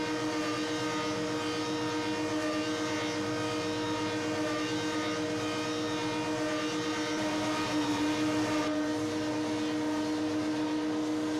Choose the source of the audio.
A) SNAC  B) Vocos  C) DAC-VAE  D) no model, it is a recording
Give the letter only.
D